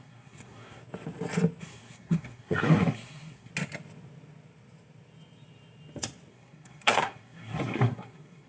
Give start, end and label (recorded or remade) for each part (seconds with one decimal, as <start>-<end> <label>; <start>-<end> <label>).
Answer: 0.0-0.8 remade; 0.8-1.6 recorded; 1.6-3.5 remade; 3.5-6.3 recorded; 6.3-8.5 remade